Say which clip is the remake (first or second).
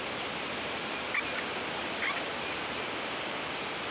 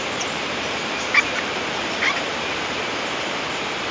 second